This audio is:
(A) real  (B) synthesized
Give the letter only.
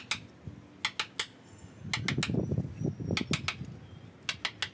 A